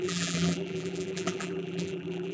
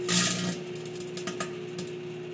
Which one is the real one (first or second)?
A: second